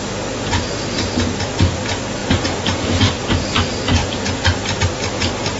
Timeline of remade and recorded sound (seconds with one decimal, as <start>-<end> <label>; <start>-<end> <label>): 0.0-2.2 recorded; 2.2-3.3 remade; 3.3-5.6 recorded

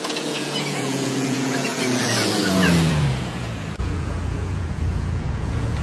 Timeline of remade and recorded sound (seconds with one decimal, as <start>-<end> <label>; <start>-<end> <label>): 0.0-5.8 remade

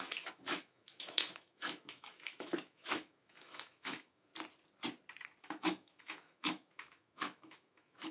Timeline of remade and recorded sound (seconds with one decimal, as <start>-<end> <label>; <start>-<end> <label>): 0.0-4.3 remade; 4.3-5.4 recorded; 5.4-8.1 remade

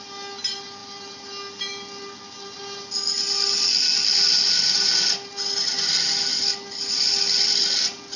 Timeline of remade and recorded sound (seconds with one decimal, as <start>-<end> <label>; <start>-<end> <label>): 0.0-8.2 recorded

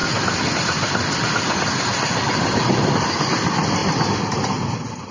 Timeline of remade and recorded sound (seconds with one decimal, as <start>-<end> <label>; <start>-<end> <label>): 0.0-5.1 recorded

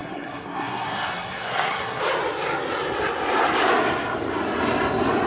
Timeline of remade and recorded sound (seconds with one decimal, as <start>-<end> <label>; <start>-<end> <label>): 0.0-2.0 remade; 2.0-5.3 recorded

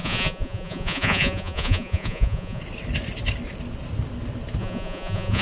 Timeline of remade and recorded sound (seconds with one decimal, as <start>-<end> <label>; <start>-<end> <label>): 0.0-2.6 remade; 2.6-4.6 recorded; 4.6-5.4 remade